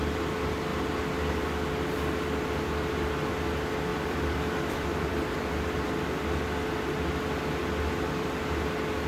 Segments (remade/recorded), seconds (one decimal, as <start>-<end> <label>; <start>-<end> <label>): 0.0-3.9 recorded; 3.9-6.2 remade; 6.2-9.1 recorded